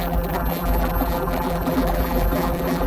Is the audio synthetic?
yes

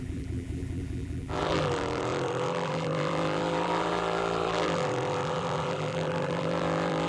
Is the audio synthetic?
yes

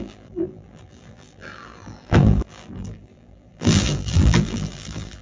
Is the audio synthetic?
yes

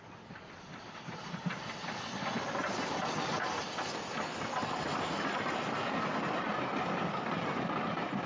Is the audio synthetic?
no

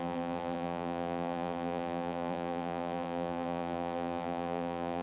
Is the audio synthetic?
yes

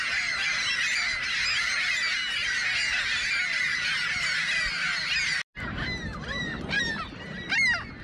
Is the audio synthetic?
no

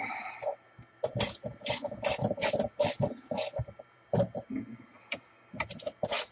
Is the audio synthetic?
yes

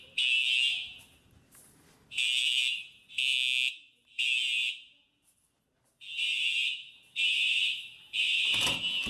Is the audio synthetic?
yes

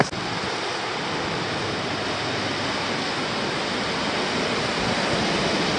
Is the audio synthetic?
no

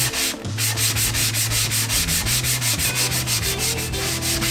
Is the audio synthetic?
no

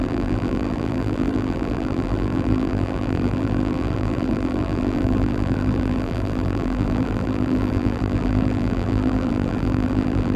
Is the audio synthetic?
yes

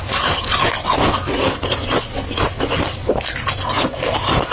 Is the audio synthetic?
yes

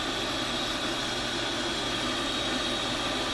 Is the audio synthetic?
no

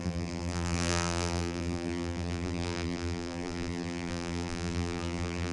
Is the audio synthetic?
yes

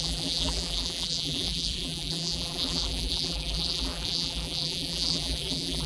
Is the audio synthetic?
yes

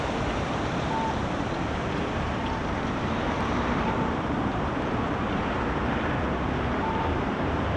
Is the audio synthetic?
yes